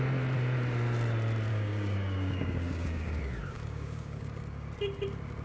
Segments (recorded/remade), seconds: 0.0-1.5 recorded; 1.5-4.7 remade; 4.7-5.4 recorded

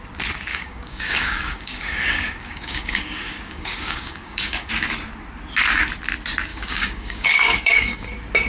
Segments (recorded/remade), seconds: 0.0-0.5 recorded; 0.5-4.7 remade; 4.7-6.5 recorded; 6.5-8.1 remade; 8.1-8.5 recorded

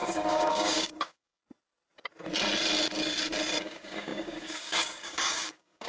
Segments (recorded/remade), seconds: 0.0-1.4 remade; 1.4-3.6 recorded; 3.6-5.9 remade

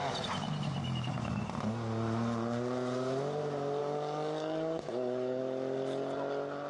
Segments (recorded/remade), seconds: 0.0-0.8 recorded; 0.8-1.4 remade; 1.4-3.8 recorded; 3.8-5.4 remade; 5.4-6.7 recorded

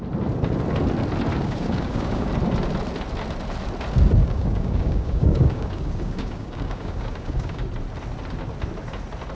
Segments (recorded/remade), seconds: 0.0-1.3 recorded; 1.3-2.3 remade; 2.3-4.2 recorded; 4.2-7.6 remade; 7.6-9.3 recorded

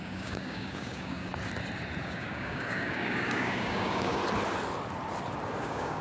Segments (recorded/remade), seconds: 0.0-1.3 remade; 1.3-2.0 recorded; 2.0-4.2 remade; 4.2-5.6 recorded; 5.6-6.0 remade

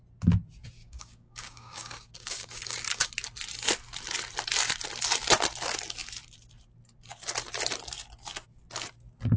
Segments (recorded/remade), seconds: 0.0-0.8 recorded; 0.8-3.1 remade; 3.1-9.4 recorded